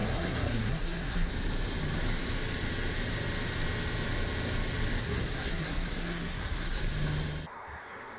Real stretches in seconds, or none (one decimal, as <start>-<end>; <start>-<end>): 1.3-5.0; 6.8-7.5

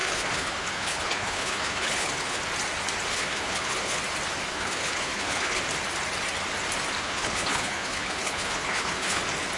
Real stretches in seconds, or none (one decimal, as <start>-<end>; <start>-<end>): 2.4-3.1; 4.0-4.5; 5.6-7.0; 9.2-9.6

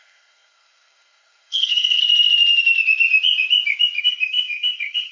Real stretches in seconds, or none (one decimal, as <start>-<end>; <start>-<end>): 2.0-4.0

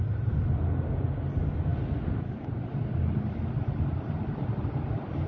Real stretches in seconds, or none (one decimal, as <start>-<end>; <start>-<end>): 0.0-5.3

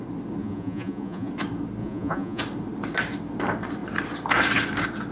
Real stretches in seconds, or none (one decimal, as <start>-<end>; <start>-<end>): 0.0-0.4; 1.3-1.8; 2.4-5.1